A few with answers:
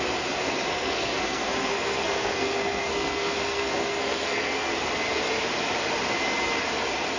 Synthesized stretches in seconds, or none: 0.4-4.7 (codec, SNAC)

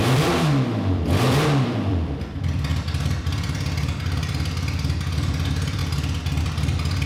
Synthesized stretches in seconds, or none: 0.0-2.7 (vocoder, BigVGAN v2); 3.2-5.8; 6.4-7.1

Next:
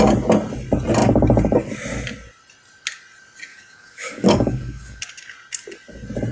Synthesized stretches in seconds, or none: 3.5-5.0 (codec, DAC)